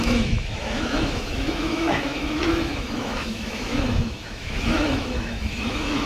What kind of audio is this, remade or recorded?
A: remade